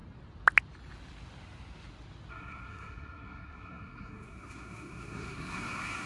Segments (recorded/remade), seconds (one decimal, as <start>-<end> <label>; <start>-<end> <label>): 0.0-2.3 recorded; 2.3-6.1 remade